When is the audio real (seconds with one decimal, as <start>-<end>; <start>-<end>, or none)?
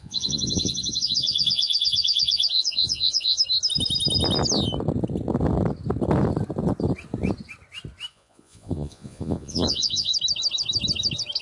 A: 3.4-8.1; 10.1-11.4